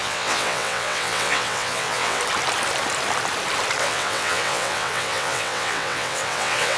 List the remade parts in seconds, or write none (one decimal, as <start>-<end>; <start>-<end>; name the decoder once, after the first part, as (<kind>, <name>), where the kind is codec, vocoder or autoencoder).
0.0-2.2 (vocoder, WaveNeXt); 3.8-6.8